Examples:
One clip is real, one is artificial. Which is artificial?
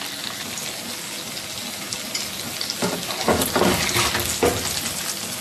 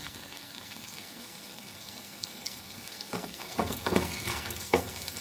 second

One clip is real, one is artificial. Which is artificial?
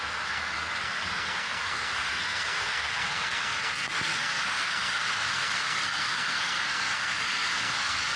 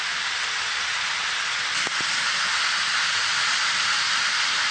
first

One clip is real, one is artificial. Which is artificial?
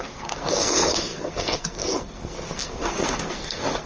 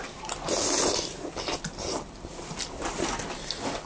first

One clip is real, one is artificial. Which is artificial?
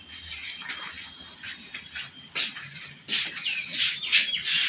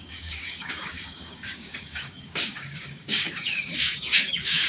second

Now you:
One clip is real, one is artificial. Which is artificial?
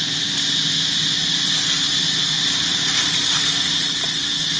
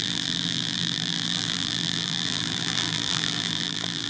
second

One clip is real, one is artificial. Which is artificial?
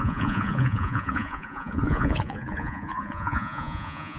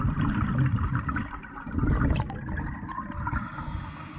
first